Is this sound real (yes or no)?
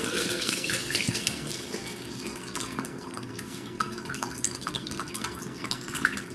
no